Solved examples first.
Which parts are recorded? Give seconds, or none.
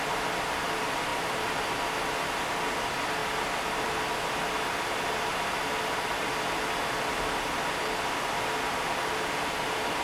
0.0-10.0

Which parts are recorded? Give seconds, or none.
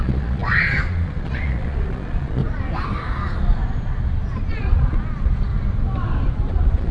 2.4-4.5; 5.5-6.3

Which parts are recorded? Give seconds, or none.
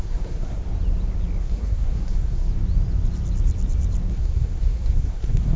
0.6-1.4; 2.5-4.1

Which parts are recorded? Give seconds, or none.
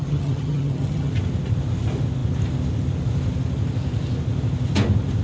1.1-5.2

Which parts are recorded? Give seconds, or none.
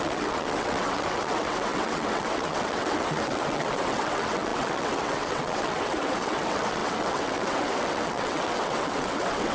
none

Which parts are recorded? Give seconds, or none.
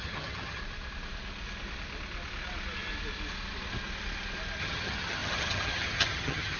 0.6-4.6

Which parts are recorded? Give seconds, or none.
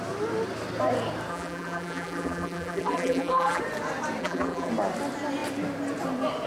0.0-1.3; 3.6-4.2; 4.7-6.5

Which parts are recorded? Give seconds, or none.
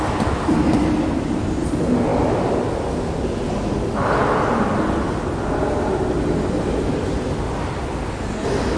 0.0-8.8